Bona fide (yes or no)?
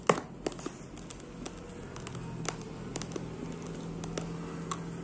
yes